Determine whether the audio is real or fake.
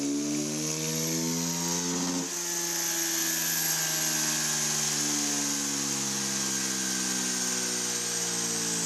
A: real